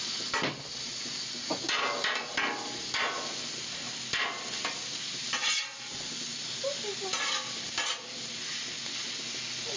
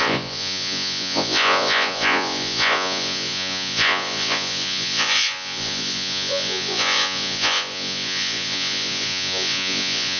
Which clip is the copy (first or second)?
second